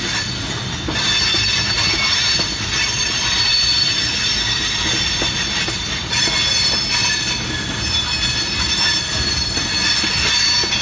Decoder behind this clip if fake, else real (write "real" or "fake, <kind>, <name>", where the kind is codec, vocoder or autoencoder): real